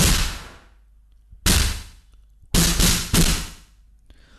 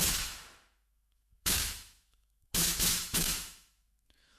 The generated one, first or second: second